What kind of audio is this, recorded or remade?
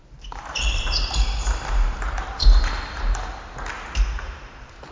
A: remade